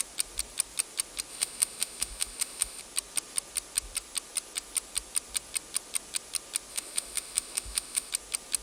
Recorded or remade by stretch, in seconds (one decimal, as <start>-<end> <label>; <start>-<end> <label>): 0.0-1.3 recorded; 1.3-2.8 remade; 2.8-6.7 recorded; 6.7-8.1 remade; 8.1-8.6 recorded

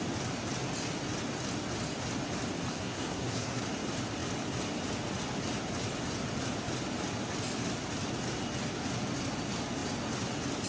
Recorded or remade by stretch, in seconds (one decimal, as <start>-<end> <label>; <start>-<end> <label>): 0.0-2.7 recorded; 2.7-3.6 remade; 3.6-10.7 recorded

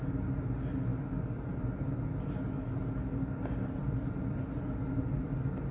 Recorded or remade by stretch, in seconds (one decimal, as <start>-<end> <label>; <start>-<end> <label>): 0.0-5.7 recorded

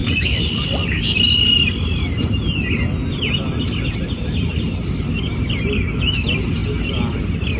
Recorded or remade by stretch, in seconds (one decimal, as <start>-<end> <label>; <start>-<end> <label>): 0.0-7.6 recorded